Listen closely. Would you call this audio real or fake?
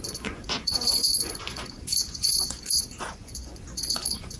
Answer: fake